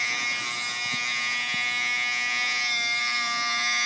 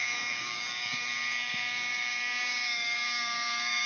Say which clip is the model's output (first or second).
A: second